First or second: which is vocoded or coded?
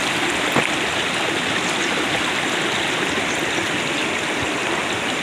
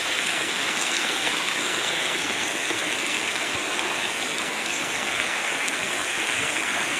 second